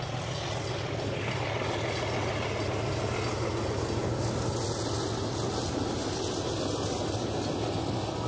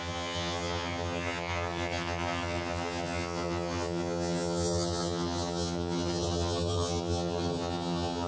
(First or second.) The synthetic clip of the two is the second